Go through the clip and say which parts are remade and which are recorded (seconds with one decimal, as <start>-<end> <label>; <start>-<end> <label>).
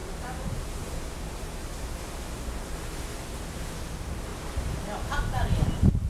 0.0-2.0 remade; 2.0-4.3 recorded; 4.3-6.1 remade